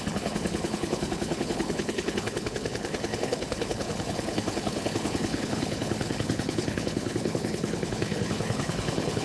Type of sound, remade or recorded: remade